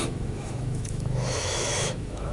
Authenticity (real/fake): fake